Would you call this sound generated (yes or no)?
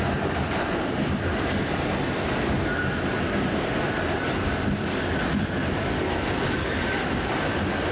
no